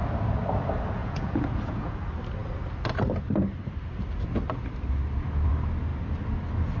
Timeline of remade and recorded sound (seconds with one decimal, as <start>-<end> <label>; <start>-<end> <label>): 0.0-1.0 recorded; 1.0-2.0 remade; 2.0-6.8 recorded